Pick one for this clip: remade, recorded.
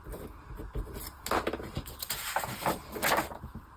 recorded